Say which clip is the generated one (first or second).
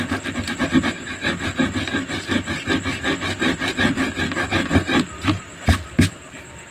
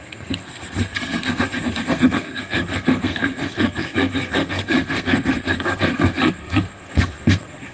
second